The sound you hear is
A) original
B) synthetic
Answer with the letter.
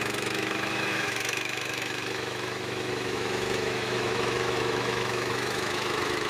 B